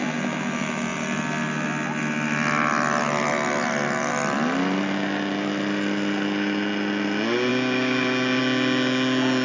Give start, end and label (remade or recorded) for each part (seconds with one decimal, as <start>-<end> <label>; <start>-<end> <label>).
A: 0.0-9.4 recorded